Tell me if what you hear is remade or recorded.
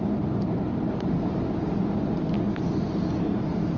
remade